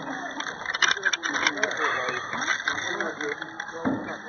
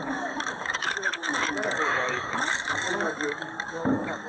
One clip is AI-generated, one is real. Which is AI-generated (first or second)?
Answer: second